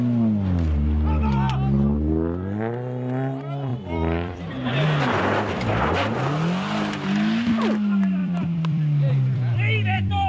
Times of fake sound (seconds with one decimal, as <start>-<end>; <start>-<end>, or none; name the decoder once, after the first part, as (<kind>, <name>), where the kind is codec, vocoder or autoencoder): 3.7-4.7 (vocoder, BigVGAN v2); 8.2-10.3